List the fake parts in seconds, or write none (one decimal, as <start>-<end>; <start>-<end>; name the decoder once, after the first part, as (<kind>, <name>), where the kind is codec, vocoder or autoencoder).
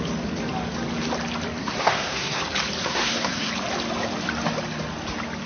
1.6-2.4 (codec, SNAC); 2.8-3.5